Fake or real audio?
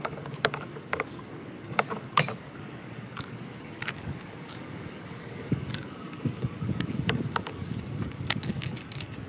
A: fake